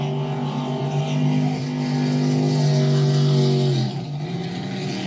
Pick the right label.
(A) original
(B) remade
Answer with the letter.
A